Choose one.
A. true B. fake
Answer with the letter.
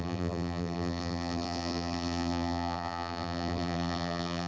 B